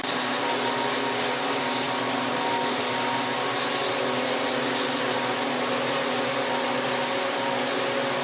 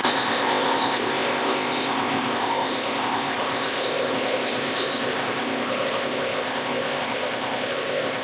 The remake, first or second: second